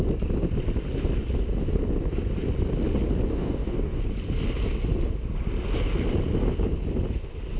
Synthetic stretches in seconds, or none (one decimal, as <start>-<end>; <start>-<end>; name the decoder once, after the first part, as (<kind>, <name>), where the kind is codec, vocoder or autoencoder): 3.3-4.0 (codec, DAC)